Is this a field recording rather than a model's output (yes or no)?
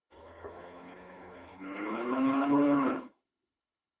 no